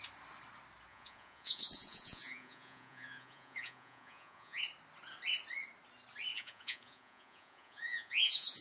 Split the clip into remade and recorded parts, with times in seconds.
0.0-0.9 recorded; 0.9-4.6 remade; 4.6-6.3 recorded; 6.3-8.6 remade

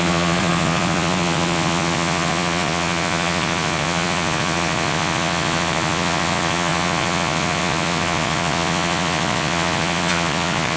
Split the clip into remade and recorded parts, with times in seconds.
0.0-10.8 remade

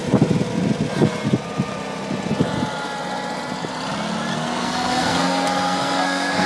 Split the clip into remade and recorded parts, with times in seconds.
0.0-4.3 recorded; 4.3-6.5 remade

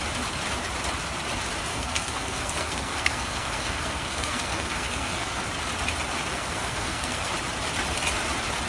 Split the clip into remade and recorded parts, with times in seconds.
0.0-1.7 recorded; 1.7-5.4 remade; 5.4-6.3 recorded; 6.3-7.3 remade; 7.3-8.7 recorded

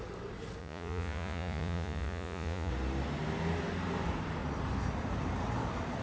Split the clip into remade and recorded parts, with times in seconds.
0.0-0.6 recorded; 0.6-2.7 remade; 2.7-6.0 recorded

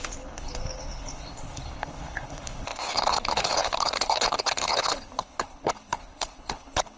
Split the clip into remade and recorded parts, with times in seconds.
0.0-7.0 remade

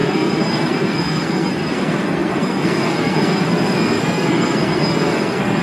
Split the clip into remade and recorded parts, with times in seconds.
0.0-5.6 remade

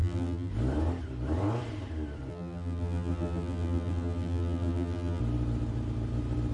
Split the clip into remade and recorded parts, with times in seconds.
0.0-0.5 remade; 0.5-2.3 recorded; 2.3-5.2 remade; 5.2-6.5 recorded